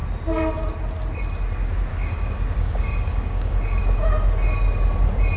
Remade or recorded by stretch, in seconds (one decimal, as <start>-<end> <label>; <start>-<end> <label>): 0.0-1.9 recorded; 1.9-3.8 remade; 3.8-5.4 recorded